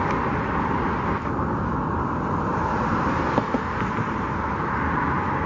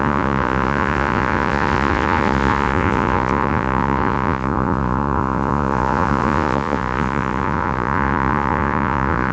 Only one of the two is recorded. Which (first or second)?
first